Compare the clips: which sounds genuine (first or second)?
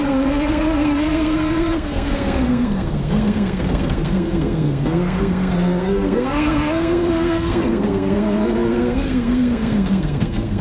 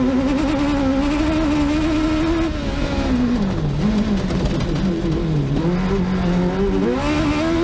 second